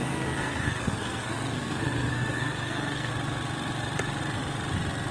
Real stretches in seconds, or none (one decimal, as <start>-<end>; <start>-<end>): 3.1-5.1